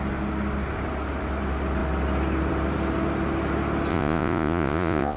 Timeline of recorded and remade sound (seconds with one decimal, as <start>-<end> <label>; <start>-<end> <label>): 0.0-3.9 recorded; 3.9-5.2 remade